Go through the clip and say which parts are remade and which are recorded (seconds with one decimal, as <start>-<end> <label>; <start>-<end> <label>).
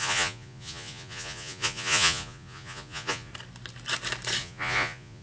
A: 0.0-3.3 remade; 3.3-4.4 recorded; 4.4-5.2 remade